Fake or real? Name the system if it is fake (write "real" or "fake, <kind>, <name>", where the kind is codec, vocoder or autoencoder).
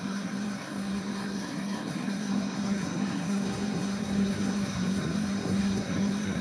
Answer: fake, codec, SNAC